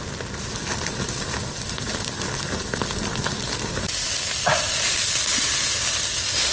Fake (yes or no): no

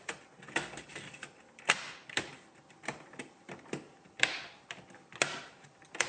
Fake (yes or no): no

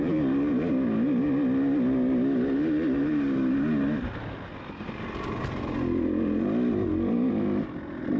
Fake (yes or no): no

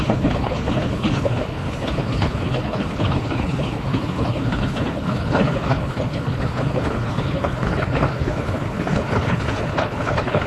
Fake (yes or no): yes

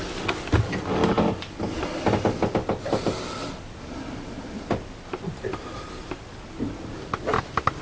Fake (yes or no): no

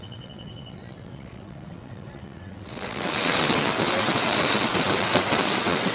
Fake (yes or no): yes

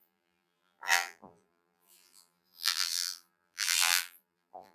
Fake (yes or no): yes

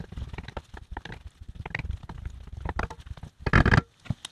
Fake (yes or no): no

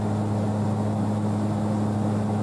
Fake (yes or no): no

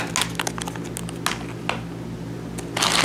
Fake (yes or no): no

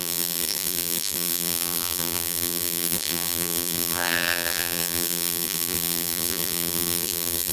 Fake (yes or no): yes